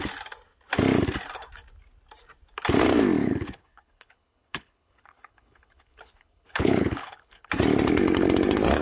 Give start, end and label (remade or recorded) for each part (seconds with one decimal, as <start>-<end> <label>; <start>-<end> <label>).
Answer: 0.0-3.2 recorded; 3.2-7.5 remade; 7.5-8.8 recorded